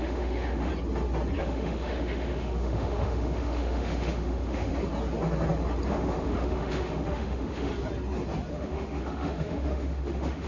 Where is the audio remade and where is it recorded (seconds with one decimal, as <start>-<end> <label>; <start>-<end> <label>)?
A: 0.0-0.7 remade; 0.7-1.4 recorded; 1.4-4.7 remade; 4.7-5.9 recorded; 5.9-7.7 remade; 7.7-8.5 recorded; 8.5-10.5 remade